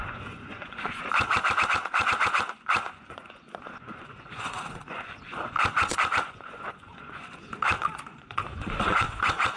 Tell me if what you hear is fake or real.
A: fake